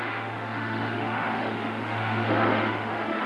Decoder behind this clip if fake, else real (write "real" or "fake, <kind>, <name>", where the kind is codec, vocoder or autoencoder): fake, autoencoder, DAC-VAE